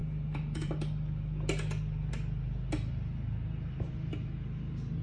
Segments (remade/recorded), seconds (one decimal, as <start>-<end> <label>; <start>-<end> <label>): 0.0-0.7 remade; 0.7-5.0 recorded